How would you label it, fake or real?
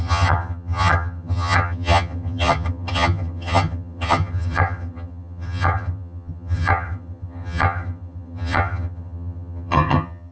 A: fake